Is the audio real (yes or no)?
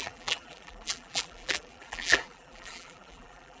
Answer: no